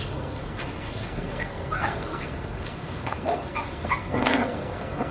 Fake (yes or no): yes